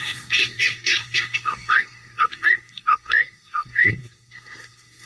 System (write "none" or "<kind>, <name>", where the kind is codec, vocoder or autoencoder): codec, SNAC